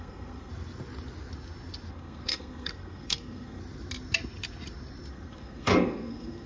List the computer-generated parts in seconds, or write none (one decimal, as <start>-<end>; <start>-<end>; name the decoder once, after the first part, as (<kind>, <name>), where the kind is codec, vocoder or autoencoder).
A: 0.0-0.5 (codec, SNAC); 1.9-3.6; 5.1-6.5